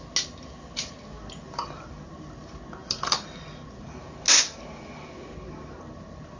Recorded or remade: recorded